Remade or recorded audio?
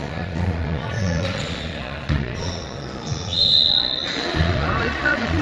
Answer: remade